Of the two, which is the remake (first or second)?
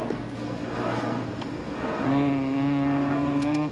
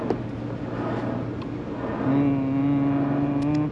first